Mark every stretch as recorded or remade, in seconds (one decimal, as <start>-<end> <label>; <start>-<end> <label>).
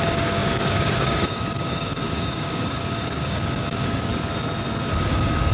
0.0-4.1 remade; 4.1-5.0 recorded; 5.0-5.5 remade